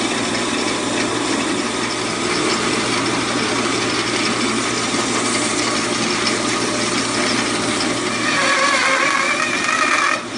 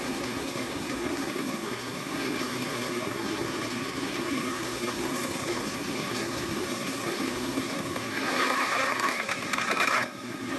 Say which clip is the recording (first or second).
first